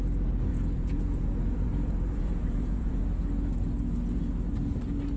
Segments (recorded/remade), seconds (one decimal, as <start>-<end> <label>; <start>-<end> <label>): 0.0-0.5 recorded; 0.5-3.0 remade; 3.0-5.2 recorded